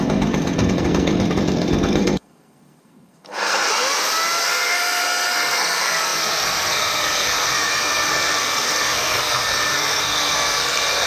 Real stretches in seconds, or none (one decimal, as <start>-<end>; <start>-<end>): 3.7-4.4